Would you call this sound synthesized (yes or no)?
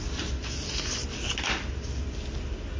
no